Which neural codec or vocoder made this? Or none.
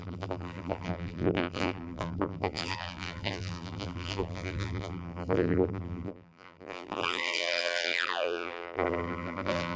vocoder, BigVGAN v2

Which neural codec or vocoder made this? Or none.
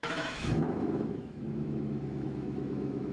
autoencoder, DAC-VAE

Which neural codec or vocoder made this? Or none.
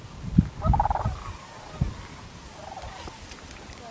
none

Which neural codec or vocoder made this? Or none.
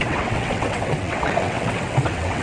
vocoder, WaveNeXt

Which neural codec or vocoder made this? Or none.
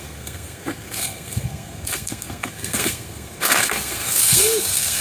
codec, SNAC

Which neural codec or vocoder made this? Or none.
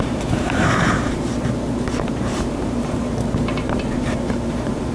vocoder, BigVGAN v2